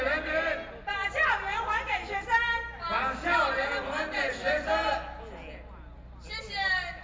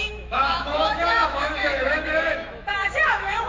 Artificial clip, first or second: second